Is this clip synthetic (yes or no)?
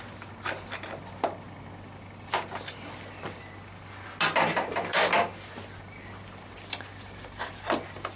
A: no